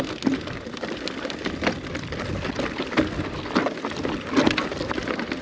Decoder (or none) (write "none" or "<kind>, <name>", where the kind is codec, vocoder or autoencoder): none